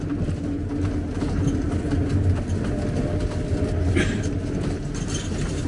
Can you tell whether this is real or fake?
real